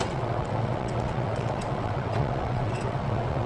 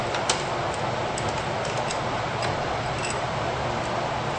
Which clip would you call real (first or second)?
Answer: second